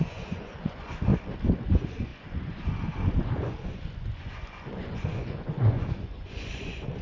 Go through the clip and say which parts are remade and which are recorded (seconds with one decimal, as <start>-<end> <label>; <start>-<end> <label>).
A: 0.0-1.1 remade; 1.1-1.6 recorded; 1.6-7.0 remade